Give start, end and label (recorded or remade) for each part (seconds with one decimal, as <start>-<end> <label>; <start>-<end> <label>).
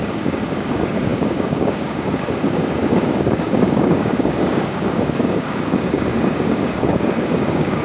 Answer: 0.0-7.8 remade